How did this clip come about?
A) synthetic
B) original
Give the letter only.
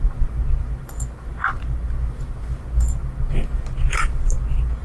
B